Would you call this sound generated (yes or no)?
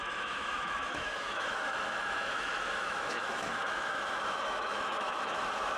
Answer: yes